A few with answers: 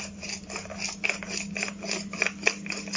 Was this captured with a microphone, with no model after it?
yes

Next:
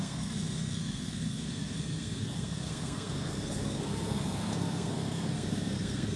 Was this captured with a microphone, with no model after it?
no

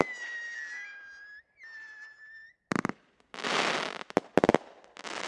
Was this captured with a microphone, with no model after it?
yes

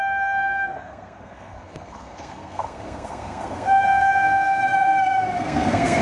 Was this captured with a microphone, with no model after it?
no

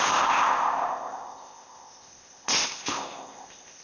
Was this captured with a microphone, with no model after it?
no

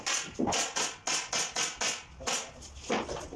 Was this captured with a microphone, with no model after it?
yes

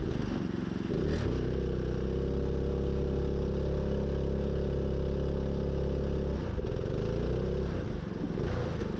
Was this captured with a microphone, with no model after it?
yes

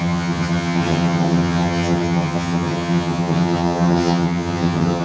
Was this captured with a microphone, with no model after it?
no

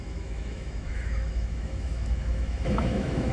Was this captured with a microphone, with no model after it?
no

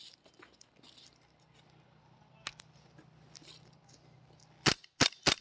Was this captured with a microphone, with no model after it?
yes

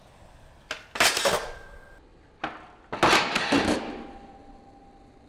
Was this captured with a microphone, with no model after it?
yes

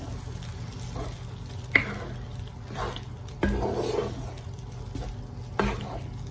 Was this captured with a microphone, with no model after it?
yes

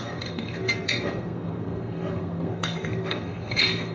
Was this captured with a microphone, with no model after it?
no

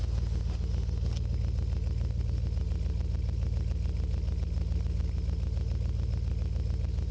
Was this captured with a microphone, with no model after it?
yes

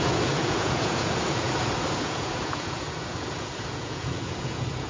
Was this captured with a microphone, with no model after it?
no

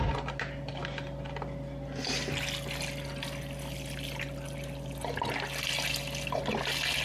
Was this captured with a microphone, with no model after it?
yes